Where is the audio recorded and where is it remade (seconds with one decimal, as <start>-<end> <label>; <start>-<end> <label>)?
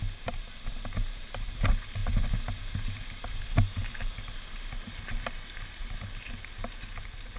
0.0-2.0 recorded; 2.0-3.4 remade; 3.4-7.4 recorded